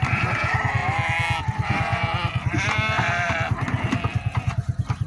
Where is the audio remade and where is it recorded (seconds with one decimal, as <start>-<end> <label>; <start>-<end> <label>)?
0.0-5.1 recorded